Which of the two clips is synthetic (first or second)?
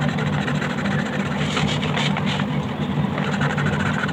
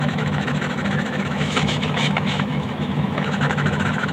second